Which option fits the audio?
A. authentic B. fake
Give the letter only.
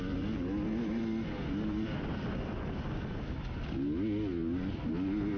A